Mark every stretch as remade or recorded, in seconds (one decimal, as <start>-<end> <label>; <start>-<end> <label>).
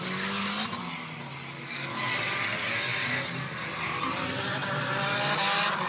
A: 0.0-5.9 recorded